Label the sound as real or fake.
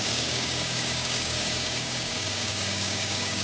fake